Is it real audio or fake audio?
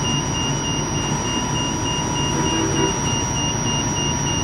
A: real